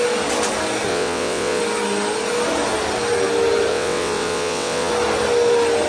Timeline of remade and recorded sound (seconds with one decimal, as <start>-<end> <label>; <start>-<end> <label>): 0.0-0.9 recorded; 0.9-1.6 remade; 1.6-3.7 recorded; 3.7-4.9 remade; 4.9-5.9 recorded